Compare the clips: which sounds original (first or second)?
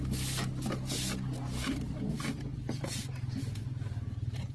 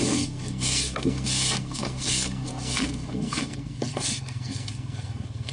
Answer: first